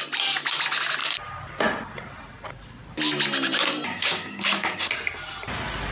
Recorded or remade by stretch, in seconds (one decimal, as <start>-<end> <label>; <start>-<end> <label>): 0.0-3.9 recorded; 3.9-4.8 remade; 4.8-5.9 recorded